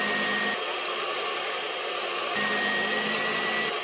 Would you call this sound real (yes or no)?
yes